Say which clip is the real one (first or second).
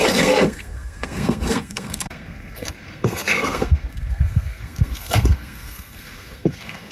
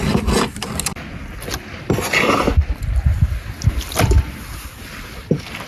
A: second